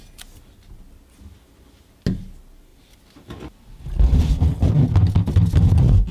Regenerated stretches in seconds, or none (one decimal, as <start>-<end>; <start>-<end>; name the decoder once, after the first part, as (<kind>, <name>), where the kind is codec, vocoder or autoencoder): none